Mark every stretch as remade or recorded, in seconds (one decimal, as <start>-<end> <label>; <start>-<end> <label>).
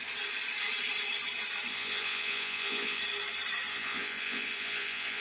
0.0-1.7 recorded; 1.7-3.0 remade; 3.0-3.7 recorded; 3.7-5.2 remade